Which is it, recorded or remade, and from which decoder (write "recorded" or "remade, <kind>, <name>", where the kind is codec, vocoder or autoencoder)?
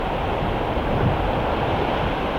remade, vocoder, BigVGAN v2